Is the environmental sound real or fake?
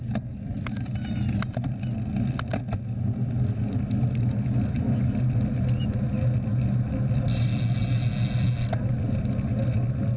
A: real